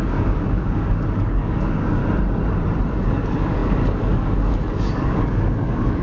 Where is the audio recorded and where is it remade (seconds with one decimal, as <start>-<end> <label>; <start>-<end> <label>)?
0.0-2.0 remade; 2.0-2.9 recorded; 2.9-6.0 remade